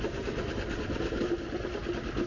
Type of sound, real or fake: real